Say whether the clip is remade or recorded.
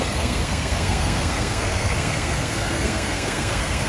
remade